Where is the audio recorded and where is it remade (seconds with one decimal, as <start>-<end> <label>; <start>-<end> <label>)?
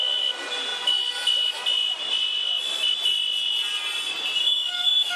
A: 0.0-4.4 recorded; 4.4-5.2 remade